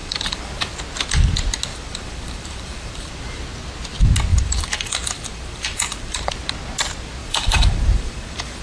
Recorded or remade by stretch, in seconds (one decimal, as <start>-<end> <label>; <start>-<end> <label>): 0.0-0.7 remade; 0.7-1.7 recorded; 1.7-3.1 remade; 3.1-4.3 recorded; 4.3-6.2 remade; 6.2-7.2 recorded; 7.2-8.6 remade